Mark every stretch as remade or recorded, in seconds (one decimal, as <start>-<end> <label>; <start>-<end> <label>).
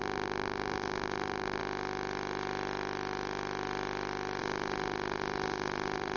0.0-1.6 remade; 1.6-4.4 recorded; 4.4-6.2 remade